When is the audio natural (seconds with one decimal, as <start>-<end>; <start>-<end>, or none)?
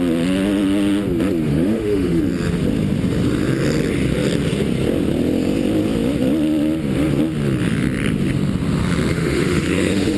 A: 0.0-1.5; 2.2-9.1